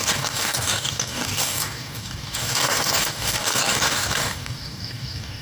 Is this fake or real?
fake